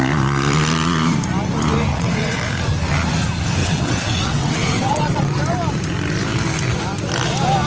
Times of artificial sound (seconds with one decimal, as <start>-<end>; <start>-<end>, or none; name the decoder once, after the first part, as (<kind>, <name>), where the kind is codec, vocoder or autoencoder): 1.9-2.4 (vocoder, WaveNeXt); 3.6-5.4